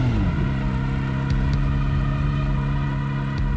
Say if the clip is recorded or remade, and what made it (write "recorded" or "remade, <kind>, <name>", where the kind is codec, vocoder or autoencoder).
recorded